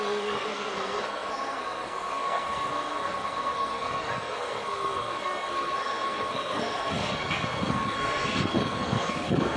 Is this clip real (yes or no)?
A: no